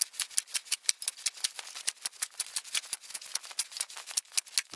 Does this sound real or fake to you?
real